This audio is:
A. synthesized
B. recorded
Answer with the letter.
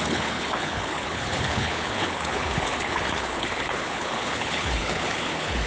A